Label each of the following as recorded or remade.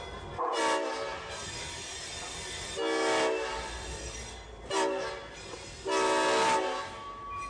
recorded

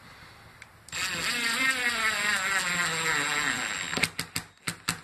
recorded